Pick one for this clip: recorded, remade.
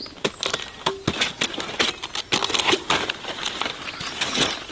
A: recorded